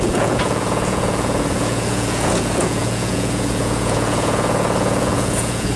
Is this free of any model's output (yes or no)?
no